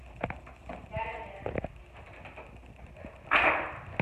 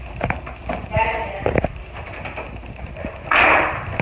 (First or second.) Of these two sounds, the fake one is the second